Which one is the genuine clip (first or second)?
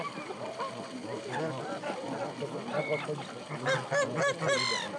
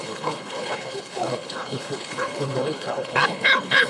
first